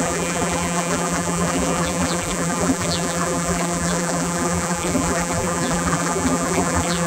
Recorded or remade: remade